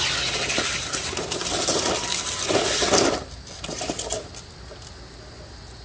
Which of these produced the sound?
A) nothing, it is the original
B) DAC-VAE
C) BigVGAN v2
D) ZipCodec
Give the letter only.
A